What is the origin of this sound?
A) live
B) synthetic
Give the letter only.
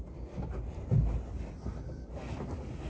A